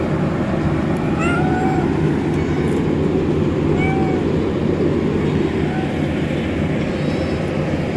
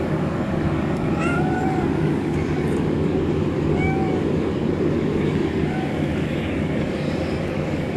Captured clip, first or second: first